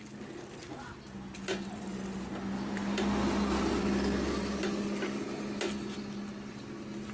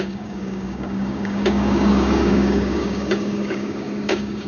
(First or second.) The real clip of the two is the first